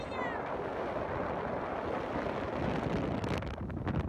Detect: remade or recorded recorded